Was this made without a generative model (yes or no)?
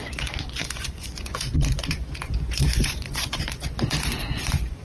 no